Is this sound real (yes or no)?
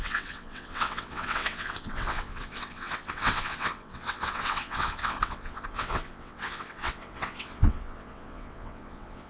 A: no